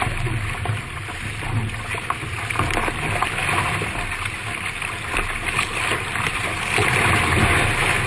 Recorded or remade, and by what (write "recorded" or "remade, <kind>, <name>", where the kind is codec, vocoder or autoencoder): recorded